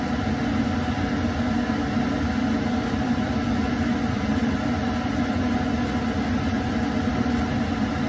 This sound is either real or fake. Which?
real